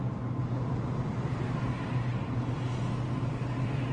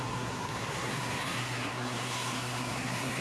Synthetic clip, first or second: second